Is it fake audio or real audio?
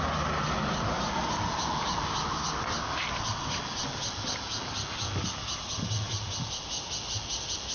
real